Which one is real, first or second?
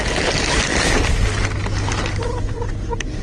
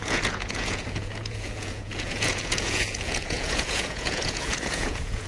first